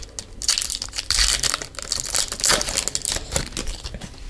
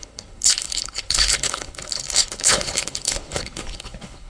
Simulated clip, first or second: second